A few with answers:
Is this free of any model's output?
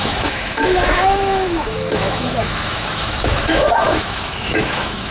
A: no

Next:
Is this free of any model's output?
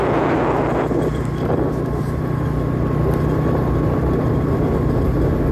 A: yes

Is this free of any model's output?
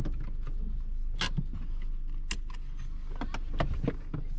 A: yes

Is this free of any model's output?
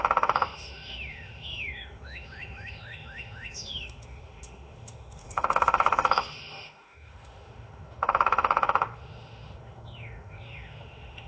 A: no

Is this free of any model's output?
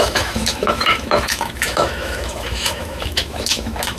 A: no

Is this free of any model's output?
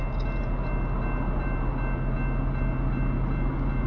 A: yes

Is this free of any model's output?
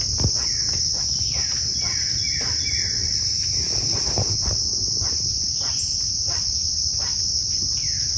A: yes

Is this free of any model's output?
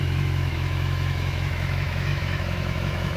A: no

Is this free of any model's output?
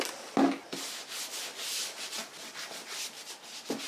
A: yes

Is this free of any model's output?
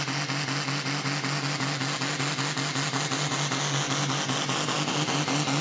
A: yes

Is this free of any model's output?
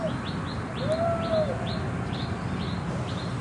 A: yes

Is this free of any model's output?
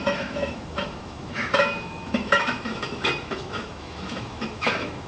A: no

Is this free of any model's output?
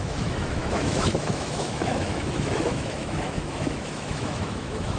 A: no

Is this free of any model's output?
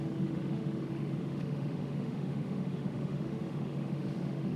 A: no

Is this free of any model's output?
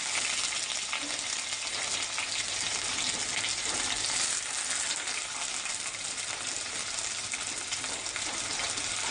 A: yes